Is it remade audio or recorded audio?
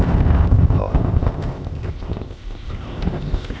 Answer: remade